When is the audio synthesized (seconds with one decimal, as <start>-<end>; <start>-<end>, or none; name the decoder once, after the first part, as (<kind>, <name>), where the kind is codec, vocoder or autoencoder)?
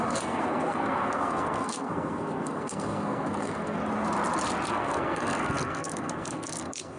0.0-3.8 (codec, SNAC); 4.7-7.0